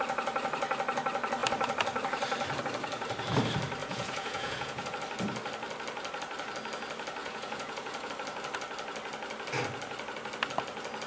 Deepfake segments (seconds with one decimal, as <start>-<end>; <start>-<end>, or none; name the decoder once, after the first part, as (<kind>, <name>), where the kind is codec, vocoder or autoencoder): 3.8-4.9 (vocoder, Vocos); 7.2-8.1